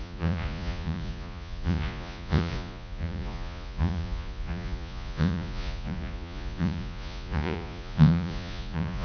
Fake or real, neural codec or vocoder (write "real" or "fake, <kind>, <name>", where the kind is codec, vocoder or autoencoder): fake, vocoder, Vocos